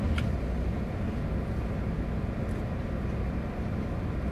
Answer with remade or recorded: recorded